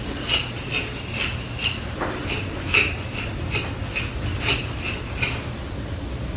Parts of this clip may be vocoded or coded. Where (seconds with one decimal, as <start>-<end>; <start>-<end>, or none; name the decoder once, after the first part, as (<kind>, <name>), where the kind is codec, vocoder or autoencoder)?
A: none